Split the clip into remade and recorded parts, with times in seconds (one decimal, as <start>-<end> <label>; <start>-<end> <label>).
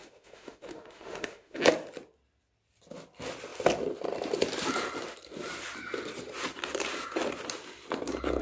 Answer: 0.0-1.6 remade; 1.6-8.4 recorded